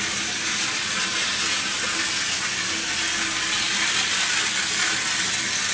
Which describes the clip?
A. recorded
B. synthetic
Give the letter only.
A